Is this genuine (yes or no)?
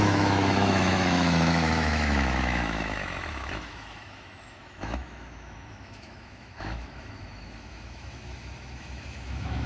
no